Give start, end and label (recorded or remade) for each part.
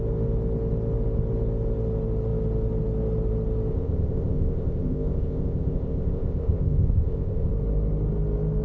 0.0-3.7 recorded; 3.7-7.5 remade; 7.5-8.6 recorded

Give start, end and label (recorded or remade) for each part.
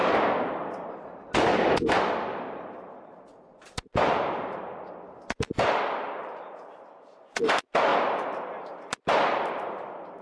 0.0-2.3 recorded; 2.3-7.5 remade; 7.5-10.2 recorded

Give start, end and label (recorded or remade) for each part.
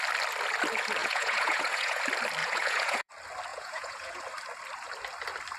0.0-1.0 recorded; 1.0-2.0 remade; 2.0-2.4 recorded; 2.4-3.1 remade; 3.1-3.5 recorded; 3.5-4.2 remade; 4.2-5.6 recorded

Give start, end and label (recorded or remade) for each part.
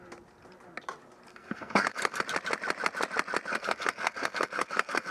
0.0-1.3 recorded; 1.3-2.2 remade; 2.2-3.5 recorded; 3.5-5.1 remade